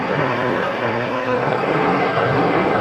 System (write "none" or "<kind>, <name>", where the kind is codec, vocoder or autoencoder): codec, SNAC